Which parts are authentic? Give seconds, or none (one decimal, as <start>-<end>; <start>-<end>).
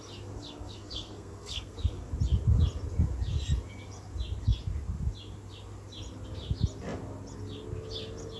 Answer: 0.0-0.4; 2.1-8.4